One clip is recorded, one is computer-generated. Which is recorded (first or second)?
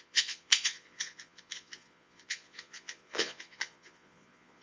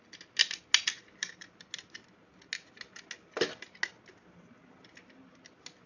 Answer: second